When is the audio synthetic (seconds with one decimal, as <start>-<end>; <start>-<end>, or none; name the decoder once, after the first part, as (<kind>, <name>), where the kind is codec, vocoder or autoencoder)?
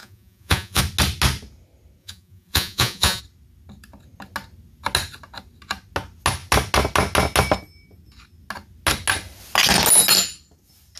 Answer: 0.0-0.8 (vocoder, Vocos); 2.0-3.2